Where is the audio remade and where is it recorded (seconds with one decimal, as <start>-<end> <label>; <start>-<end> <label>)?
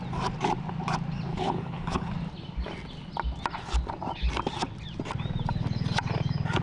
0.0-1.3 recorded; 1.3-2.1 remade; 2.1-6.6 recorded